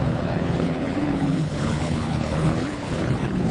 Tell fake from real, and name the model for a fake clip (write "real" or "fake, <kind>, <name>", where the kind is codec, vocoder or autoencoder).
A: fake, codec, HILCodec